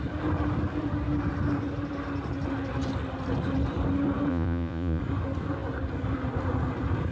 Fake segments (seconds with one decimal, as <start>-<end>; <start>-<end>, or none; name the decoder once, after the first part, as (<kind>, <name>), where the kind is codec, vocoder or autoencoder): 4.3-5.0 (vocoder, Vocos)